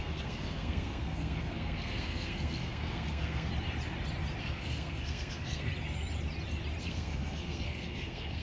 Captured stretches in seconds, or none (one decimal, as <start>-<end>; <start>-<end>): 3.5-4.4; 5.7-6.8